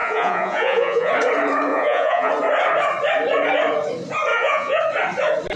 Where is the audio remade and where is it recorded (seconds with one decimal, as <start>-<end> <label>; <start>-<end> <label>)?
0.0-1.1 remade; 1.1-1.7 recorded; 1.7-2.3 remade; 2.3-4.3 recorded; 4.3-4.8 remade; 4.8-5.6 recorded